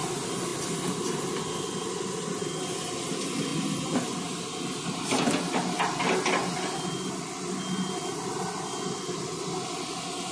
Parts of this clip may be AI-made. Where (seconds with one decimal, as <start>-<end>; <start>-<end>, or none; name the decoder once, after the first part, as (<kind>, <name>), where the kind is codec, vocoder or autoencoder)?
none